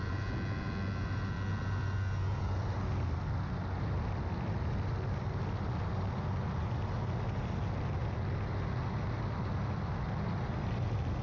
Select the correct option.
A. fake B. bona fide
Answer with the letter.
B